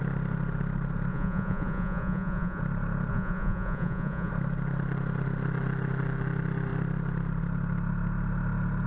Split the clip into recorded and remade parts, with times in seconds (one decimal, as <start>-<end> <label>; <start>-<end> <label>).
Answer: 0.0-1.1 recorded; 1.1-2.6 remade; 2.6-3.1 recorded; 3.1-4.3 remade; 4.3-8.9 recorded